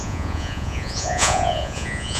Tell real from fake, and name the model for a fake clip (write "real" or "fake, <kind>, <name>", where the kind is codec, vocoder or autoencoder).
fake, vocoder, Vocos